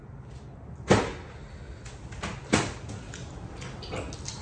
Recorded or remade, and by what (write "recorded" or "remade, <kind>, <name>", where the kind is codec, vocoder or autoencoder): recorded